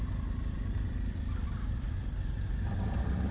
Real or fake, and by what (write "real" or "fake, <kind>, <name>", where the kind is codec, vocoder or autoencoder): fake, vocoder, BigVGAN v2